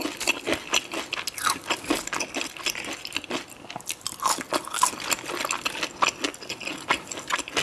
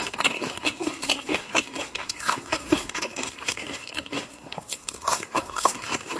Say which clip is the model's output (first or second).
second